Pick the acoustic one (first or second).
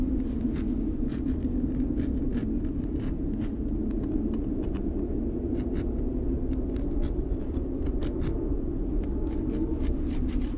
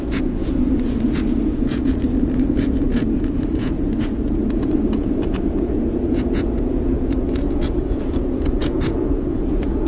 first